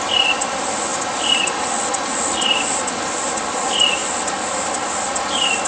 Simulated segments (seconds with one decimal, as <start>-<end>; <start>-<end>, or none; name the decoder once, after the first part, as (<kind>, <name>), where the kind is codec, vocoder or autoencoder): none